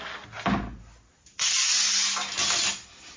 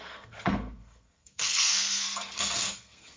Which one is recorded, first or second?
first